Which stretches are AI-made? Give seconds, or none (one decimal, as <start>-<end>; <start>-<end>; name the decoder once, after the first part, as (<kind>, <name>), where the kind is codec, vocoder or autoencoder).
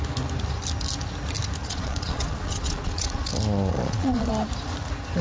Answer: 1.6-3.3 (vocoder, Vocos); 3.7-4.3